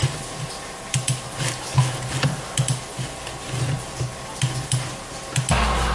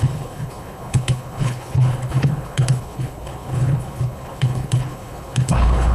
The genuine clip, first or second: first